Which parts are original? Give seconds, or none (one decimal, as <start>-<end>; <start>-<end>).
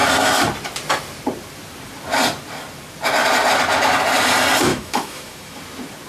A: 0.0-4.7; 5.6-6.1